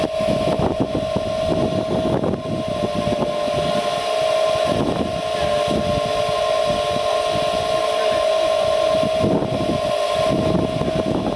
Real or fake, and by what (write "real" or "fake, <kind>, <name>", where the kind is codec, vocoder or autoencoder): real